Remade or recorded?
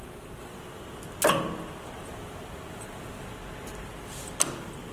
recorded